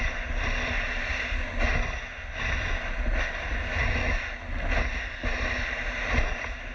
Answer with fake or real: real